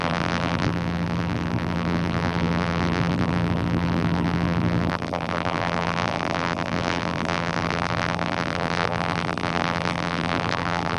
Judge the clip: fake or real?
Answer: fake